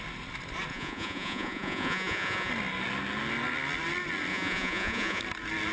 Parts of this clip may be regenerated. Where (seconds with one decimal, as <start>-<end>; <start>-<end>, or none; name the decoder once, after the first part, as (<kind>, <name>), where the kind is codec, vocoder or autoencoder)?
0.7-2.5 (vocoder, Vocos); 4.3-5.2